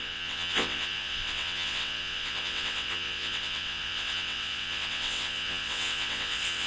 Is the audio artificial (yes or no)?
yes